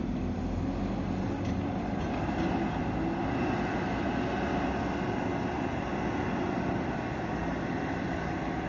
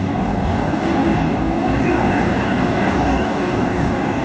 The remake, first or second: second